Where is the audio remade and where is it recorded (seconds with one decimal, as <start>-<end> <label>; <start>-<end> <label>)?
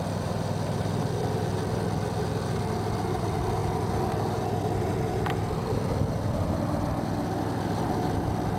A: 0.0-8.6 recorded